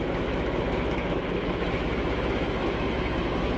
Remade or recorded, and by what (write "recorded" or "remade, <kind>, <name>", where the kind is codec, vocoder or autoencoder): remade, autoencoder, DAC-VAE